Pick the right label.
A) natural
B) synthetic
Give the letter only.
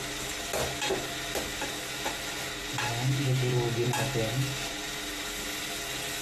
A